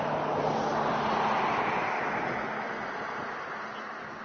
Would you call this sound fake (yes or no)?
no